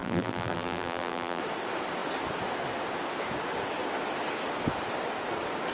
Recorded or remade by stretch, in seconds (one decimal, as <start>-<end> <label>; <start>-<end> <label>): 0.0-1.4 remade; 1.4-5.7 recorded